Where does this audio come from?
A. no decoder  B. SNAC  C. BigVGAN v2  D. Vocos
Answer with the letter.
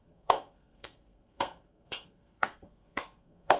B